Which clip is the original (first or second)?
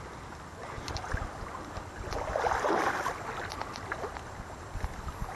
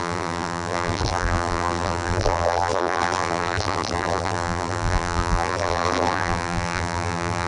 first